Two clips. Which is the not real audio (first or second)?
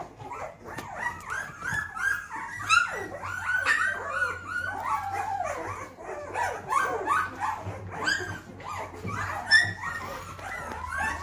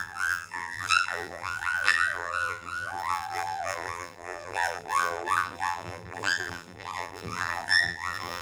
second